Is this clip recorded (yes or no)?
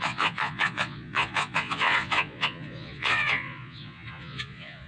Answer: no